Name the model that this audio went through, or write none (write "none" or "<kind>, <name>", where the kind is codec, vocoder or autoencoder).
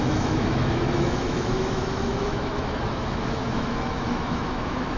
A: autoencoder, DAC-VAE